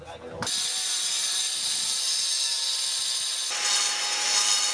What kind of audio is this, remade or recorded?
recorded